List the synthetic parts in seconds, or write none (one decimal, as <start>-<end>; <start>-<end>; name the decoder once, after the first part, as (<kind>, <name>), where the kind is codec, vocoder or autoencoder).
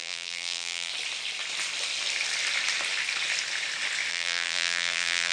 0.0-0.9 (vocoder, BigVGAN v2); 4.1-5.3